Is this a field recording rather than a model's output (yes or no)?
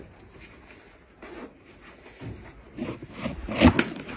yes